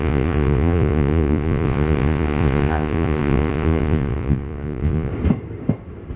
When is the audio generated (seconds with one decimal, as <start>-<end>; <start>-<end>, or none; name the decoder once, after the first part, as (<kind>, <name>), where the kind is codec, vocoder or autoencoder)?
0.0-5.1 (vocoder, Vocos)